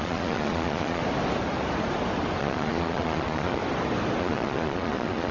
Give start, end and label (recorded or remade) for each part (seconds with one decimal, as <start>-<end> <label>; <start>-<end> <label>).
0.0-1.0 remade; 1.0-2.4 recorded; 2.4-3.6 remade; 3.6-4.2 recorded; 4.2-5.3 remade